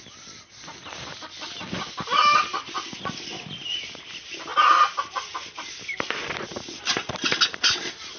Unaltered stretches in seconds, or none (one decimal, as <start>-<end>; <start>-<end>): 0.0-8.2